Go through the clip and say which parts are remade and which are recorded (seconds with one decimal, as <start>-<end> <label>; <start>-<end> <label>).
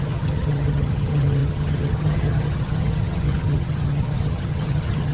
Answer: 0.0-5.1 remade